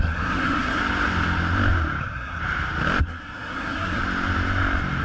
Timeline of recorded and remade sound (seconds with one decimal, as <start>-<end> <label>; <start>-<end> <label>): 0.0-0.8 remade; 0.8-2.0 recorded; 2.0-2.4 remade; 2.4-3.0 recorded; 3.0-4.0 remade; 4.0-5.0 recorded